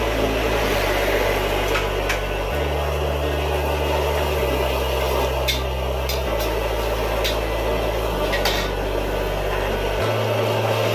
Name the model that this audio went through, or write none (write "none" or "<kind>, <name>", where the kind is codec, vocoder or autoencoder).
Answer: none